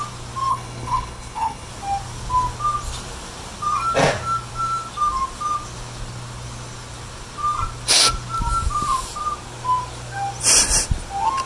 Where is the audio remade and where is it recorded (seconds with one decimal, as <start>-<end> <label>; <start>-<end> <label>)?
0.0-0.5 recorded; 0.5-1.7 remade; 1.7-11.5 recorded

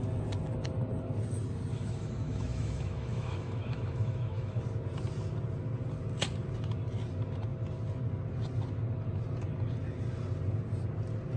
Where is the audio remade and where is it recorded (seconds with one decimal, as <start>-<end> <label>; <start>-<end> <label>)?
0.0-1.7 recorded; 1.7-4.6 remade; 4.6-11.4 recorded

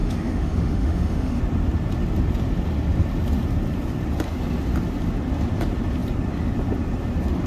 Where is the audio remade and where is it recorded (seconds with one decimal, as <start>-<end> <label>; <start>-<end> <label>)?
0.0-1.4 remade; 1.4-7.5 recorded

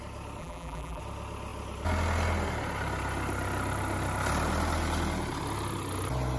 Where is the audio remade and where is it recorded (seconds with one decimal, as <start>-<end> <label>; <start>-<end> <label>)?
0.0-0.4 recorded; 0.4-1.0 remade; 1.0-6.4 recorded